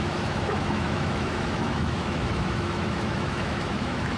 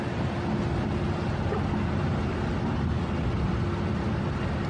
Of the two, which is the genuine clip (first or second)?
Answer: second